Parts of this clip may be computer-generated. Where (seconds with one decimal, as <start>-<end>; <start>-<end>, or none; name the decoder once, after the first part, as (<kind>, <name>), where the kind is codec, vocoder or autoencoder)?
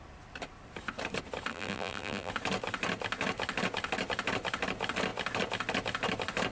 1.5-2.3 (vocoder, BigVGAN v2)